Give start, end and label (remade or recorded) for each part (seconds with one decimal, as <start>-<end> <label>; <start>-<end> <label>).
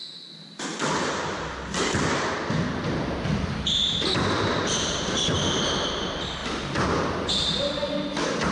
0.0-8.5 recorded